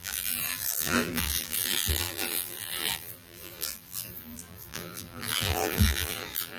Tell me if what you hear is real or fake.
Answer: fake